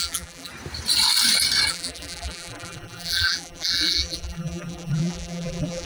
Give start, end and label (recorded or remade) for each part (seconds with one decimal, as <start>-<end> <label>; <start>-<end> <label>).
0.0-0.5 remade; 0.5-1.7 recorded; 1.7-5.9 remade